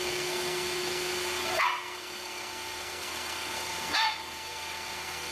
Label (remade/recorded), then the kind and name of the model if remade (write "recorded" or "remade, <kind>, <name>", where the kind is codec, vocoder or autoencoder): remade, codec, SNAC